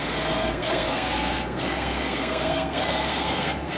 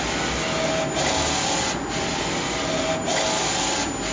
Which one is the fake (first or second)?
first